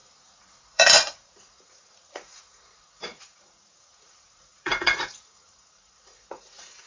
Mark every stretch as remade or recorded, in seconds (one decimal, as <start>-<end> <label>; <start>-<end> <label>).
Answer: 0.0-6.9 remade